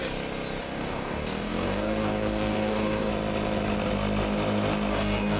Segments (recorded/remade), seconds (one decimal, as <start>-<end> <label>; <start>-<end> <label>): 0.0-0.6 recorded; 0.6-3.1 remade; 3.1-4.9 recorded; 4.9-5.4 remade